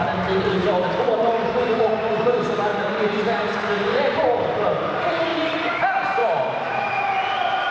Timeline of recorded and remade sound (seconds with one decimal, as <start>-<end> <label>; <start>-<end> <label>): 0.0-2.7 recorded; 2.7-3.2 remade; 3.2-5.3 recorded; 5.3-5.8 remade; 5.8-6.2 recorded; 6.2-6.9 remade; 6.9-7.7 recorded